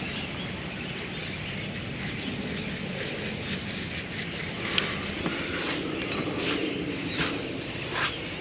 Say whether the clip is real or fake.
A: real